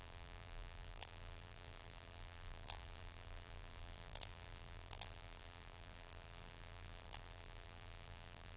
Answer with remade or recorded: remade